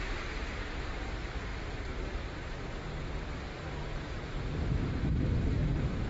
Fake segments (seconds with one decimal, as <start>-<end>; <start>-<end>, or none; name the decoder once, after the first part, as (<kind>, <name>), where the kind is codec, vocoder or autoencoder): 0.0-1.5 (vocoder, BigVGAN v2); 3.0-6.1

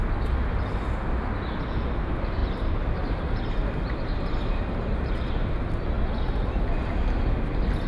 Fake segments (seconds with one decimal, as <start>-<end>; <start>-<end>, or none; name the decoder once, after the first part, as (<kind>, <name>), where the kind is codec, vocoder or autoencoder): 2.4-5.3 (vocoder, BigVGAN v2)

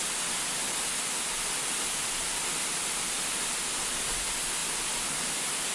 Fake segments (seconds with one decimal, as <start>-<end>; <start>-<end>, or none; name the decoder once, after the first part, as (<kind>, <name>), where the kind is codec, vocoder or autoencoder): 0.6-1.3 (vocoder, BigVGAN v2); 2.3-4.1

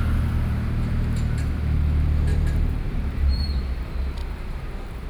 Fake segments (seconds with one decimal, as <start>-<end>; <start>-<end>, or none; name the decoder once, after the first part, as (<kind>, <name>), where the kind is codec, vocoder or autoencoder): 2.3-3.6 (vocoder, BigVGAN v2); 4.2-5.1

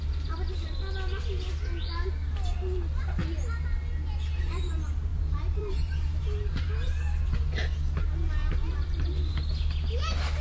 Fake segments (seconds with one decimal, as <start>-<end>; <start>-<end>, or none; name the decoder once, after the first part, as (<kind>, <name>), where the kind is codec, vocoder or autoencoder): 5.1-6.7 (vocoder, BigVGAN v2); 8.6-9.3

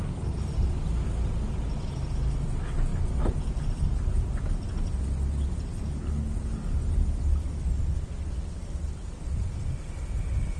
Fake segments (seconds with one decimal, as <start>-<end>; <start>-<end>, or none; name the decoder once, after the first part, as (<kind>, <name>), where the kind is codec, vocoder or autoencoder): none

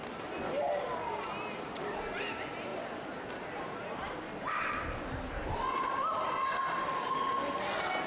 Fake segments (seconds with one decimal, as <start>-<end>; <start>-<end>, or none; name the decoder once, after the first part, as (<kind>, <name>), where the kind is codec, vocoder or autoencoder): none